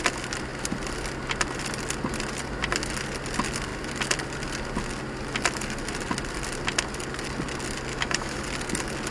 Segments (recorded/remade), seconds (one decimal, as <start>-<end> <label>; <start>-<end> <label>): 0.0-7.9 recorded; 7.9-8.4 remade; 8.4-9.1 recorded